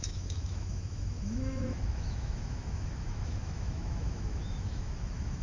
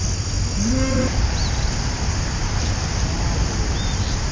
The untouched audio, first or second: second